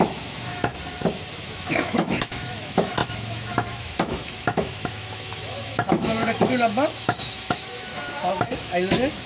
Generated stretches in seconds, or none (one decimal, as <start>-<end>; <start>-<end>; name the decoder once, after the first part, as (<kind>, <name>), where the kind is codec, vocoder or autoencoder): 0.0-0.7 (autoencoder, DAC-VAE); 1.7-9.3